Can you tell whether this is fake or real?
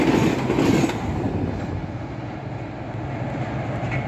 real